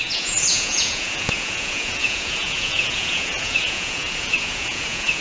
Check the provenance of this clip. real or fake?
fake